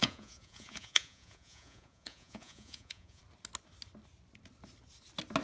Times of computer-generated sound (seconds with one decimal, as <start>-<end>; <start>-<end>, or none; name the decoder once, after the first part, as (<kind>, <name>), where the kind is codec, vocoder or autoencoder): 0.0-3.2 (vocoder, Vocos)